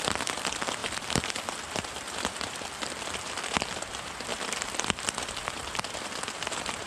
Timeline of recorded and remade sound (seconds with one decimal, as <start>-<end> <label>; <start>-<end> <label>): 0.0-0.8 remade; 0.8-1.7 recorded; 1.7-4.3 remade; 4.3-5.6 recorded; 5.6-6.9 remade